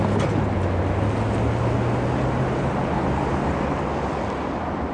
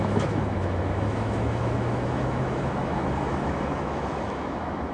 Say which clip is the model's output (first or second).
second